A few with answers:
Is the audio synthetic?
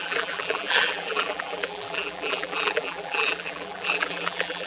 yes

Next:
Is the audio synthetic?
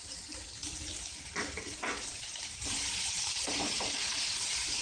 yes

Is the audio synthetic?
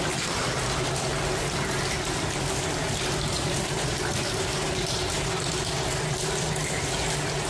no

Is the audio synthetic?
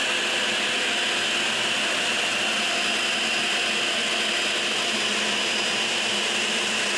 no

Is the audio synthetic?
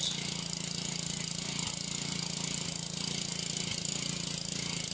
no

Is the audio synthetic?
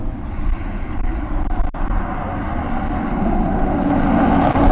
no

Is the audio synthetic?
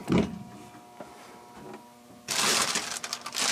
no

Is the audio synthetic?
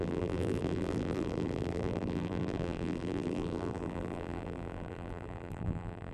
yes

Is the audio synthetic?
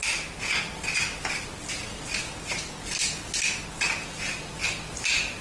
no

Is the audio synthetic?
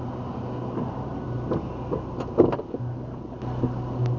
no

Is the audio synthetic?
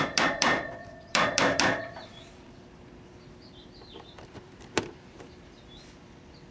yes